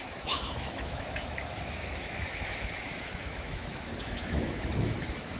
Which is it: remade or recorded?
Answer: remade